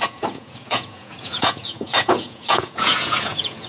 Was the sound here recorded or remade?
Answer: remade